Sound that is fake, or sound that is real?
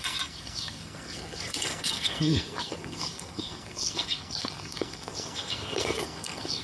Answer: fake